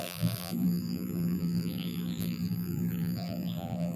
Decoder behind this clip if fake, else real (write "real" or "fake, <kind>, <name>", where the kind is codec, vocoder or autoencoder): fake, vocoder, BigVGAN v2